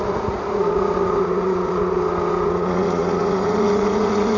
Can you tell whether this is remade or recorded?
remade